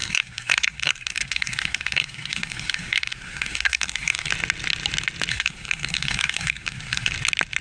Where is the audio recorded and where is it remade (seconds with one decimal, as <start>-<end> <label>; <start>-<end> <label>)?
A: 0.0-4.3 remade; 4.3-5.3 recorded; 5.3-7.1 remade; 7.1-7.6 recorded